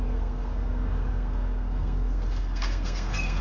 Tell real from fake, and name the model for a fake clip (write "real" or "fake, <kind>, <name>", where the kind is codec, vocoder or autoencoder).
fake, codec, SNAC